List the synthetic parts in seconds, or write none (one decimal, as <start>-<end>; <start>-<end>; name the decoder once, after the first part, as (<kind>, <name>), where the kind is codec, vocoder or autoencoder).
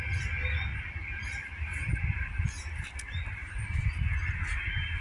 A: none